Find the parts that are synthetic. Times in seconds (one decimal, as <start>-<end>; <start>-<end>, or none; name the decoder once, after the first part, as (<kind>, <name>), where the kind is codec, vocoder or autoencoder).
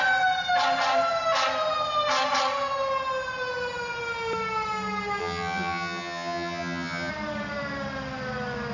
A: 5.2-7.1 (vocoder, HiFi-GAN)